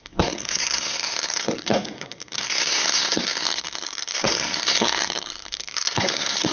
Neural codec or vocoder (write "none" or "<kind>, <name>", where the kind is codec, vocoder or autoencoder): codec, SNAC